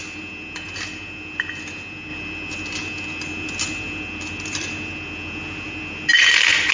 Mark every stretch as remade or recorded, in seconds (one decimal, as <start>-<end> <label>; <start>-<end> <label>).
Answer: 0.0-6.7 recorded